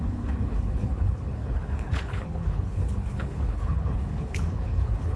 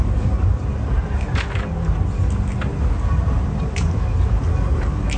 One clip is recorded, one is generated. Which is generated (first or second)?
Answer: first